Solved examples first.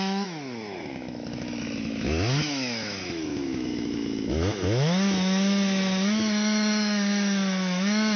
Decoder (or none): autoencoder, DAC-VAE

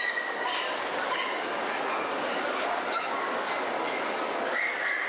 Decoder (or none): codec, DAC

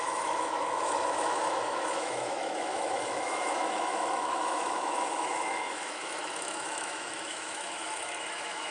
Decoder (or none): autoencoder, DAC-VAE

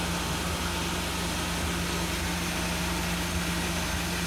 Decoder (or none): none